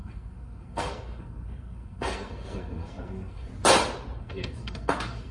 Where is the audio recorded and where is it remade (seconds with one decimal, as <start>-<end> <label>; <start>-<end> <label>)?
0.0-3.5 remade; 3.5-4.2 recorded; 4.2-5.3 remade